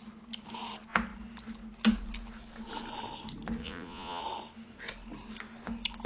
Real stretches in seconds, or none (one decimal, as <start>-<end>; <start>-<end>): 0.0-3.6; 4.2-6.1